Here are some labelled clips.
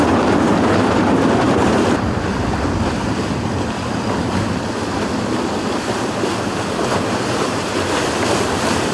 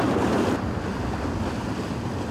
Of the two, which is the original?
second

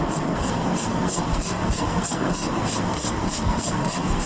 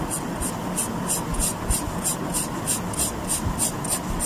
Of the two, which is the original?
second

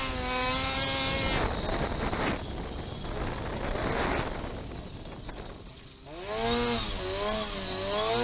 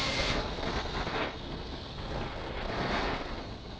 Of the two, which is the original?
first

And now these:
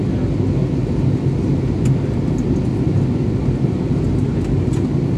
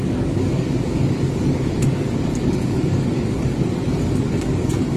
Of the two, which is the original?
first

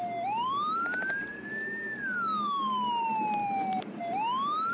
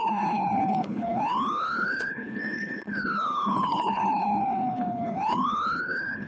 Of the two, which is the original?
first